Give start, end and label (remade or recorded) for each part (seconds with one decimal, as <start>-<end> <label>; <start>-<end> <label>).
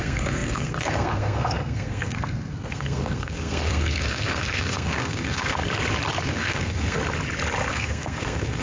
0.0-5.6 remade; 5.6-6.2 recorded; 6.2-7.0 remade; 7.0-7.7 recorded; 7.7-8.6 remade